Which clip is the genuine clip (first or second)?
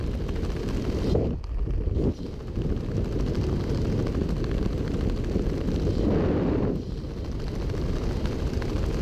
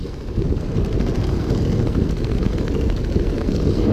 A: first